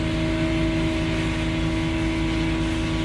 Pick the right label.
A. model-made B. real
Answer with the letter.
B